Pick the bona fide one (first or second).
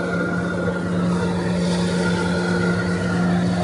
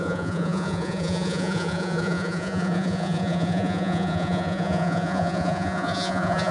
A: first